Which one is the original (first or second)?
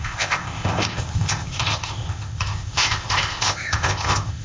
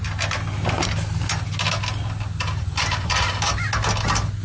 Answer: second